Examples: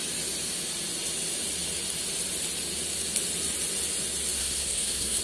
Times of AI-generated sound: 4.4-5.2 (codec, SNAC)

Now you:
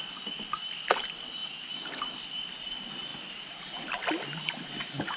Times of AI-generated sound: none

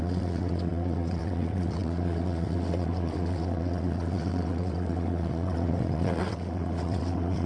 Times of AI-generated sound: 0.0-7.5 (vocoder, WaveNeXt)

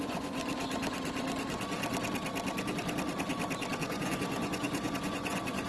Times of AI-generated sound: 0.0-0.4 (vocoder, Vocos); 3.8-5.7